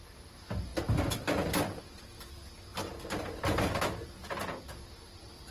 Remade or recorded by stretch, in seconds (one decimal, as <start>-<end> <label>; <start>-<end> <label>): 0.0-5.5 recorded